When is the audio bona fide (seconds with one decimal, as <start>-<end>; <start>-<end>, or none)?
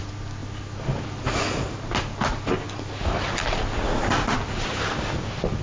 0.0-5.6